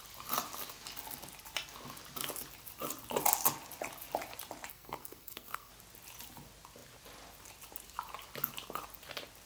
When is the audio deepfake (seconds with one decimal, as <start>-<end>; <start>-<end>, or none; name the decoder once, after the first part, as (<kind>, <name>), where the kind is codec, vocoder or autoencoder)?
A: 4.7-5.7 (codec, SNAC)

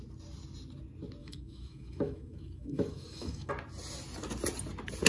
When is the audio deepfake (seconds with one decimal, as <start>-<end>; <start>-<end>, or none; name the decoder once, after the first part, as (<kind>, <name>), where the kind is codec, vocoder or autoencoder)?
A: 1.2-3.5 (autoencoder, DAC-VAE)

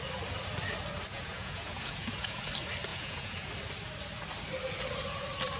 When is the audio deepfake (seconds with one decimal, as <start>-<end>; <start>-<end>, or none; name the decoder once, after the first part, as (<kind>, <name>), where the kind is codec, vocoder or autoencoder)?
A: 1.1-2.5 (vocoder, Vocos); 2.9-3.5

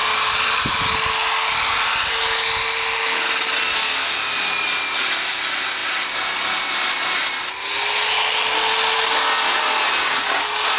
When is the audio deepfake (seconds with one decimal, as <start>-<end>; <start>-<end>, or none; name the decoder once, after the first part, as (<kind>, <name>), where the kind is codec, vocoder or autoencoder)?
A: none